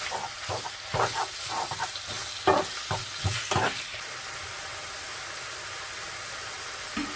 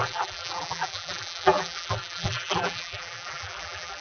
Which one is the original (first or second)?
first